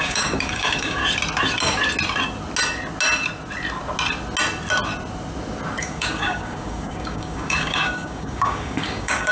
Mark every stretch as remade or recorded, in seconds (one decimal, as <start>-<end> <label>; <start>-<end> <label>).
0.0-1.0 remade; 1.0-5.8 recorded; 5.8-9.3 remade